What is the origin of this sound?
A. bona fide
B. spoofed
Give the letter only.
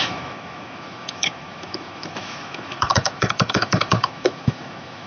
B